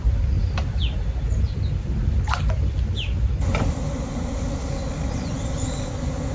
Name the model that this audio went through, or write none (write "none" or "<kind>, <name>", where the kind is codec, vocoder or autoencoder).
none